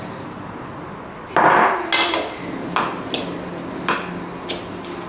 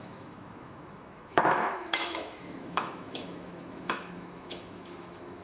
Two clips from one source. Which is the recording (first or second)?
first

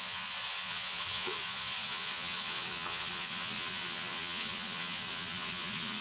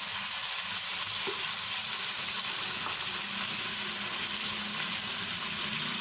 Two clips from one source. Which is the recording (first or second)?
second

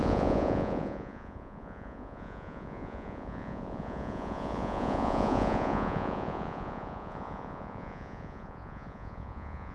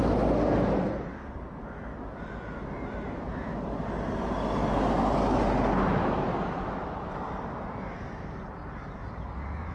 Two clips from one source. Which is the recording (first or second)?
second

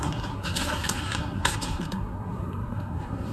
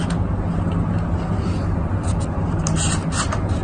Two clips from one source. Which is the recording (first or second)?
second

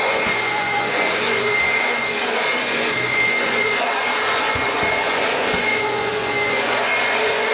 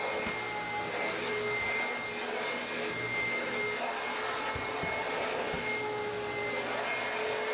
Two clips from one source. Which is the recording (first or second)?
second